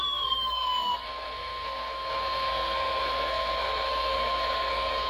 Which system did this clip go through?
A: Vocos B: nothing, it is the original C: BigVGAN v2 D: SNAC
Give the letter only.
D